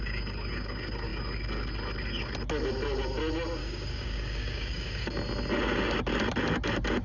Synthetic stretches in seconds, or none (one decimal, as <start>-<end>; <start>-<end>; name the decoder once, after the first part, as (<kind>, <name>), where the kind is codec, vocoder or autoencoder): 3.6-5.1 (codec, DAC)